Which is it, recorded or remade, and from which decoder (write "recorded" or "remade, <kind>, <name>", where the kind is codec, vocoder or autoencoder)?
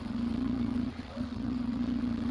remade, vocoder, WaveNeXt